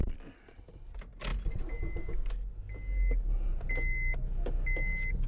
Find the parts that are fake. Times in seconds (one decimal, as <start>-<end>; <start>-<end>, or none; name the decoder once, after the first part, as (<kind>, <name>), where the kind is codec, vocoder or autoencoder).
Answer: none